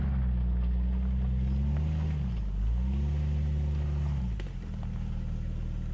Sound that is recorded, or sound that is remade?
recorded